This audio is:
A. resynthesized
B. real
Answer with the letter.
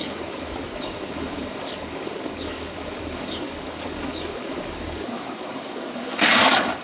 A